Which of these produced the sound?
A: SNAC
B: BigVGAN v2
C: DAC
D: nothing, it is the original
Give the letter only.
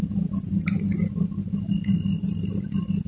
D